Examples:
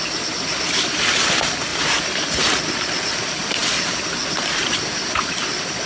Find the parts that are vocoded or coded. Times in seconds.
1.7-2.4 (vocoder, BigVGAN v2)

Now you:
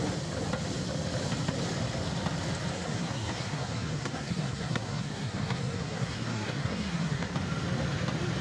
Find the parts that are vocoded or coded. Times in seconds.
2.7-7.3 (codec, SNAC)